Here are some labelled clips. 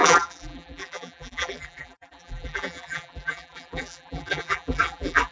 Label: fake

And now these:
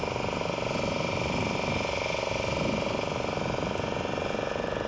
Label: real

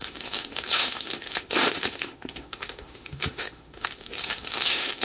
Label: fake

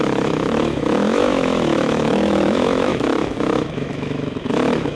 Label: fake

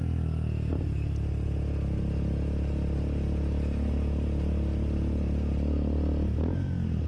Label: real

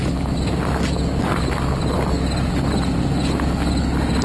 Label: real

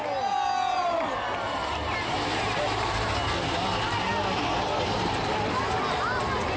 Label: real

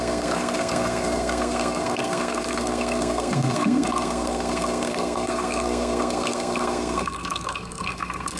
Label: fake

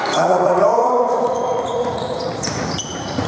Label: fake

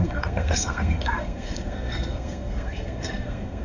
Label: fake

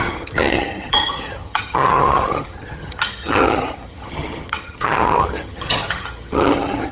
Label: fake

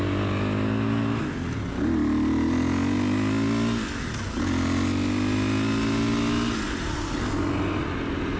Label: real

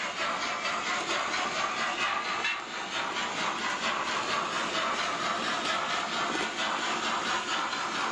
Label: real